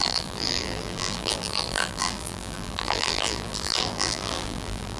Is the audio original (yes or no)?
no